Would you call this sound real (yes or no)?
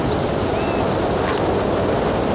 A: yes